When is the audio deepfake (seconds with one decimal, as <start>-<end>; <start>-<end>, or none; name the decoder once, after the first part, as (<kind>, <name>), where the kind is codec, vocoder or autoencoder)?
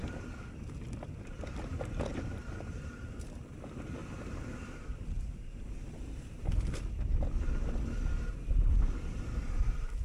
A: 2.1-3.0 (vocoder, BigVGAN v2); 4.0-6.5